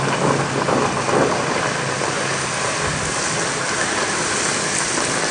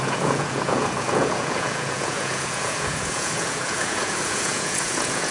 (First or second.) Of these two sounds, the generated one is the second